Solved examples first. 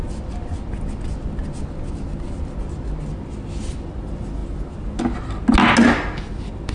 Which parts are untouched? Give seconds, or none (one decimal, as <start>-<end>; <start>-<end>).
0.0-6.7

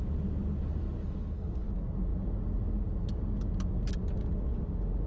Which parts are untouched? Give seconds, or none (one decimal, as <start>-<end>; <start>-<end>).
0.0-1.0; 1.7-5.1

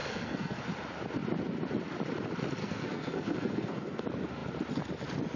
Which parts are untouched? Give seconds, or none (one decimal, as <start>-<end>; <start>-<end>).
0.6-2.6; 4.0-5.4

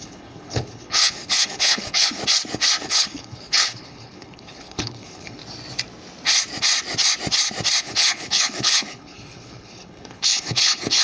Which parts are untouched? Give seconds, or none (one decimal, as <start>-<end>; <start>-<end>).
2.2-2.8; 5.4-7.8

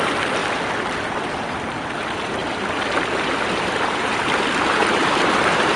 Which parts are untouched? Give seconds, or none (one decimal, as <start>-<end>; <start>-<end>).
0.0-0.4; 1.0-2.4

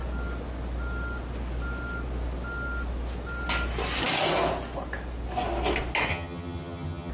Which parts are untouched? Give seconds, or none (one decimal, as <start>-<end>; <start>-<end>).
0.0-6.1

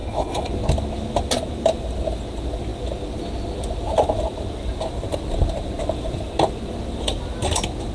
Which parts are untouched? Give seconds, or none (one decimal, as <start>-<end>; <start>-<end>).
0.5-7.9

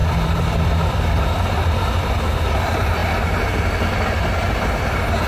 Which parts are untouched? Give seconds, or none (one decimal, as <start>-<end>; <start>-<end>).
0.0-5.3